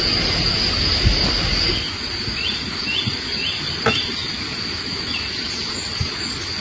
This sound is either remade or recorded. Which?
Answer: recorded